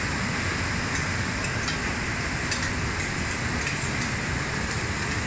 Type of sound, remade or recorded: recorded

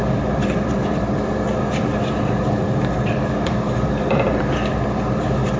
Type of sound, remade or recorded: remade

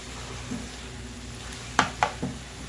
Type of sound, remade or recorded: recorded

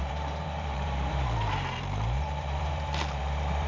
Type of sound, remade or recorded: remade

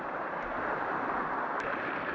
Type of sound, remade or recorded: recorded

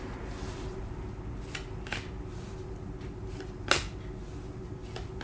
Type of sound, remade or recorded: recorded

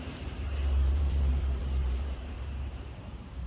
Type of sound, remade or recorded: remade